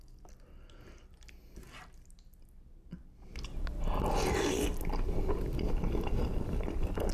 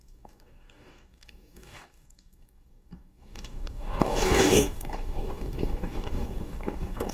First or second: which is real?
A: first